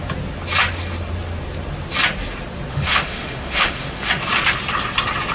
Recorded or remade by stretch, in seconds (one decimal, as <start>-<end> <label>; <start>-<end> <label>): 0.0-2.7 recorded; 2.7-4.1 remade; 4.1-5.3 recorded